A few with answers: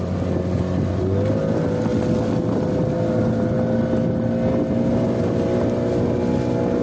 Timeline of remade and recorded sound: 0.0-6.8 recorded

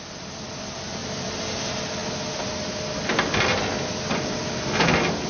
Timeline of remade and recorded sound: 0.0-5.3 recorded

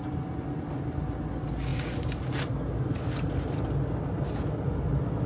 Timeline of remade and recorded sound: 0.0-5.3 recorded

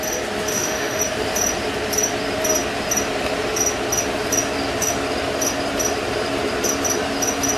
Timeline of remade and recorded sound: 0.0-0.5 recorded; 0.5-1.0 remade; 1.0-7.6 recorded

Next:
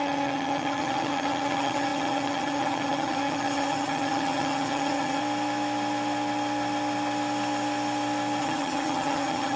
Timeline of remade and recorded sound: 0.0-5.2 remade; 5.2-8.4 recorded; 8.4-9.6 remade

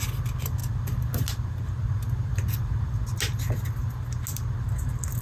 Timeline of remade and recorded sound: 0.0-5.2 recorded

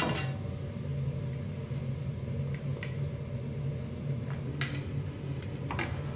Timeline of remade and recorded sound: 0.0-6.2 recorded